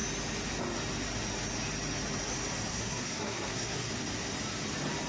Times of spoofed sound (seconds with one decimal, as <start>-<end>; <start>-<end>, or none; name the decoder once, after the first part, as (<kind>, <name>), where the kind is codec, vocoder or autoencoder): 2.7-3.9 (codec, SNAC)